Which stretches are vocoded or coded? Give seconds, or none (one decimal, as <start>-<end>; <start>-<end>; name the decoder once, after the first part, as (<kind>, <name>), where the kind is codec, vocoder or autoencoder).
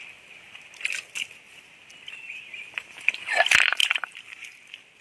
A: 3.8-5.0 (vocoder, BigVGAN v2)